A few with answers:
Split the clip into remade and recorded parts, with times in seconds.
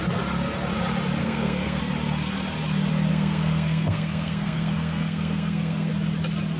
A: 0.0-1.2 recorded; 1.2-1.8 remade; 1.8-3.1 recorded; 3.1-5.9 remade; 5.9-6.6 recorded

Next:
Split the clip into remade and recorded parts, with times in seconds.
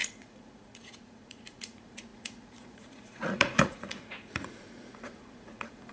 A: 0.0-5.9 remade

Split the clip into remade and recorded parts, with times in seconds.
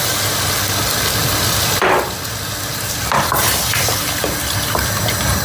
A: 0.0-1.2 recorded; 1.2-2.3 remade; 2.3-5.4 recorded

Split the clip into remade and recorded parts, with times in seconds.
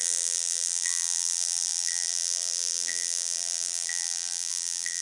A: 0.0-5.0 remade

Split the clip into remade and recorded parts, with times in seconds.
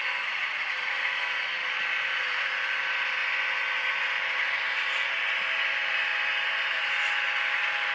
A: 0.0-3.2 remade; 3.2-4.5 recorded; 4.5-7.9 remade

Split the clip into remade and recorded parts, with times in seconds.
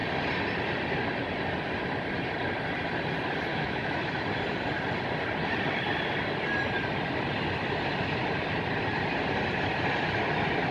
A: 0.0-3.5 recorded; 3.5-4.0 remade; 4.0-10.7 recorded